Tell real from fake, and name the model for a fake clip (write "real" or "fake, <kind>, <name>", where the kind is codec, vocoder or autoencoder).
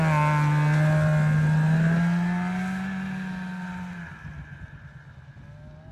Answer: real